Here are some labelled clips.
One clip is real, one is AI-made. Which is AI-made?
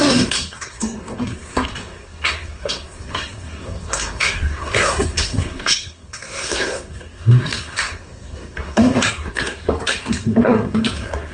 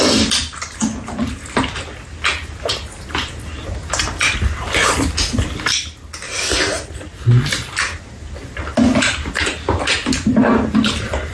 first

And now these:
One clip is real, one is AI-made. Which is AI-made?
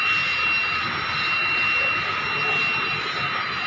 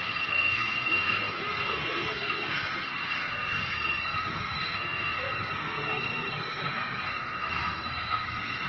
second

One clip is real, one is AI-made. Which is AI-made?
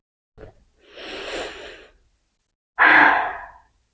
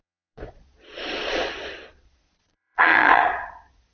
second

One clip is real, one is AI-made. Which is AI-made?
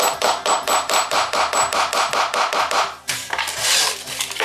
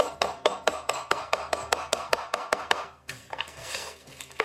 second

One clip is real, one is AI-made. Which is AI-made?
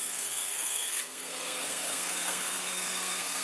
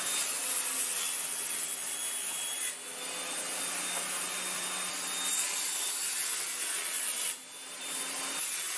first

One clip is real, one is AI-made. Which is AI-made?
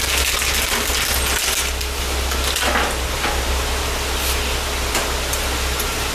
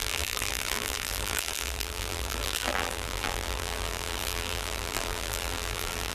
second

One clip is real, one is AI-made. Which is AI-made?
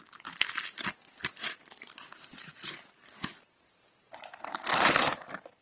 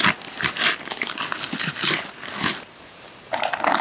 first